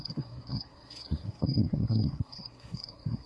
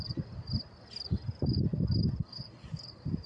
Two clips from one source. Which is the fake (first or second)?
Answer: first